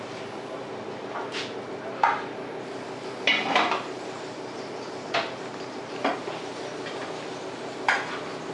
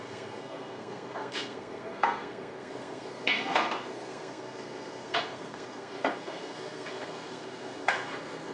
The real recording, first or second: first